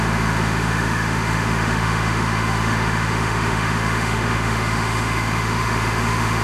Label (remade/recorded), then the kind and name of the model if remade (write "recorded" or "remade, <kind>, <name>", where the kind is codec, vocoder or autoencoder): remade, autoencoder, DAC-VAE